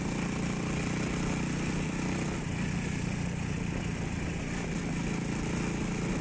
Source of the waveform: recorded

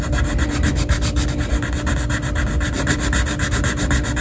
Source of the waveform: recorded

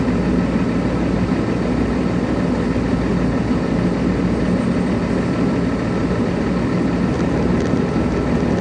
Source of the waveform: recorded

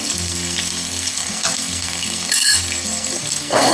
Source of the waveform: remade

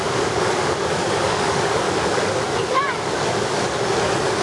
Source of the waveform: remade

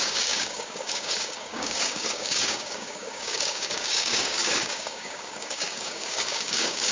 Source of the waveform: remade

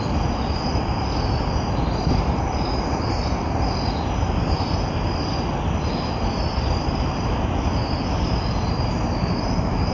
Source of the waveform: recorded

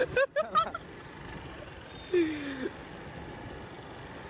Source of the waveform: recorded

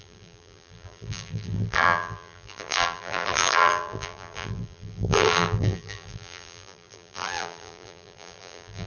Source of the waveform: remade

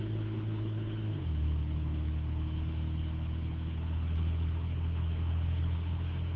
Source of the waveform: remade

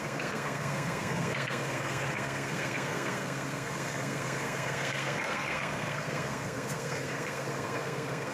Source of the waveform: remade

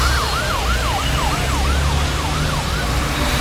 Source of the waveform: recorded